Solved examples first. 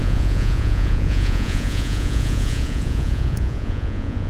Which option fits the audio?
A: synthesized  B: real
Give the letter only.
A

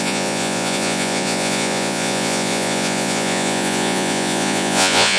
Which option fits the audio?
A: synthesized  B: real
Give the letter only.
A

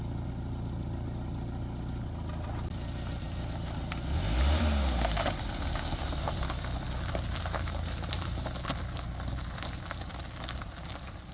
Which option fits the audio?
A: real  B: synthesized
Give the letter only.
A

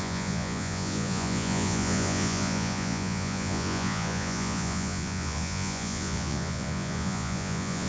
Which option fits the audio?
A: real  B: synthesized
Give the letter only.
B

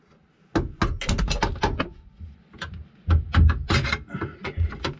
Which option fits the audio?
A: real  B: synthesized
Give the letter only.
A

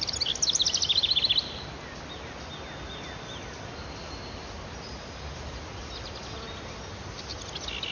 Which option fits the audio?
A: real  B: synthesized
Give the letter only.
A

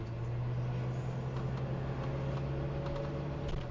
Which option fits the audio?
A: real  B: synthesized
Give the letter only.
A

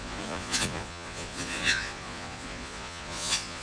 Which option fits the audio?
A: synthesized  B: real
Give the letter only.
A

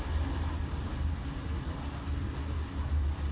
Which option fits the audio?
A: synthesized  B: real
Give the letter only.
B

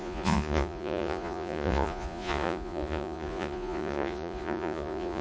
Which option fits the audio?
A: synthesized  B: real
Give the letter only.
A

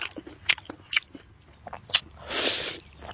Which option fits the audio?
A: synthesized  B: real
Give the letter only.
B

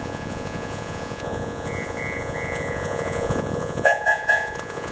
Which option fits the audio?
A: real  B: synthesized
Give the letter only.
B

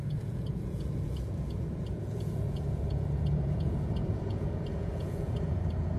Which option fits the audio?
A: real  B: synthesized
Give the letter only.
B